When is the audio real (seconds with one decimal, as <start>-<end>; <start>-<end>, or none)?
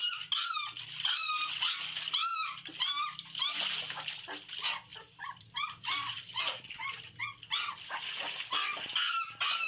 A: 0.8-2.3; 4.1-4.9; 7.2-9.7